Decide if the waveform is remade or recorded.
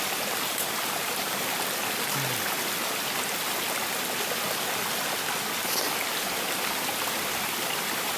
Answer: recorded